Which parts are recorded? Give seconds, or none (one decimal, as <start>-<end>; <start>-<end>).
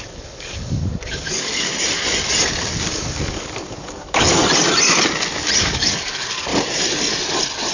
1.7-2.9; 4.4-5.6; 6.5-7.7